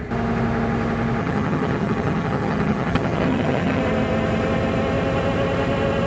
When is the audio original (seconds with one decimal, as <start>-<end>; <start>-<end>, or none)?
0.0-1.2; 3.8-6.1